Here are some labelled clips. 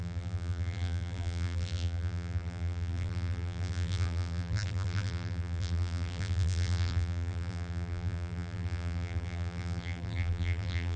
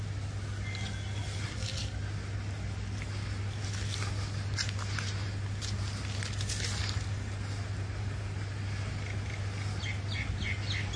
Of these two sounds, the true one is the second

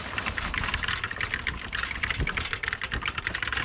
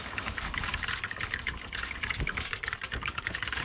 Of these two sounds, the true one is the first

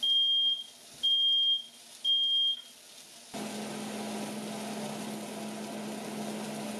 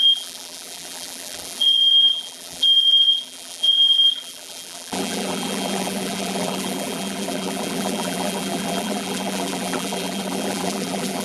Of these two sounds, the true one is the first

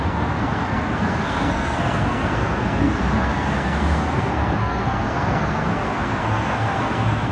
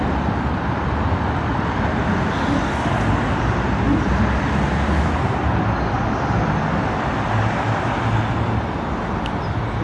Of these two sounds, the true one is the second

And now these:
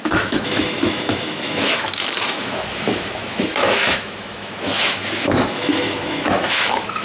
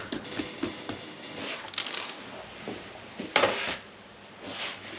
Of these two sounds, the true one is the second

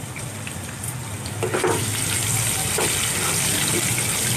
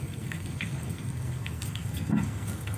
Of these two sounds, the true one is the first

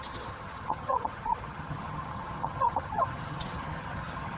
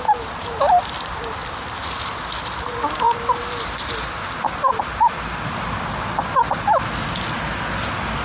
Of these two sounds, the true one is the second